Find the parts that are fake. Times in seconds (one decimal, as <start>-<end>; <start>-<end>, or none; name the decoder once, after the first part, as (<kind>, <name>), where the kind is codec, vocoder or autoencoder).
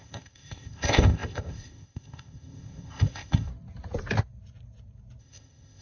0.0-3.5 (codec, ZipCodec); 5.2-5.8